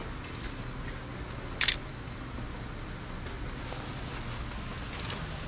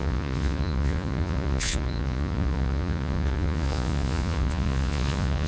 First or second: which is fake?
second